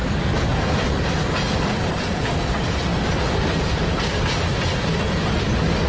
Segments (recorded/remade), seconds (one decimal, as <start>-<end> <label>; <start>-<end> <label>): 0.0-5.9 recorded